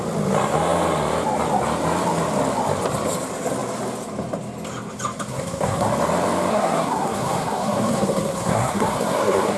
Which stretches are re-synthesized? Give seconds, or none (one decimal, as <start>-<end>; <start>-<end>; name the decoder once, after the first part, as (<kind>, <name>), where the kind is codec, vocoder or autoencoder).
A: 5.3-5.9 (codec, SNAC); 6.5-9.6